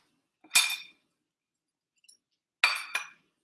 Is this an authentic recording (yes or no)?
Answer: yes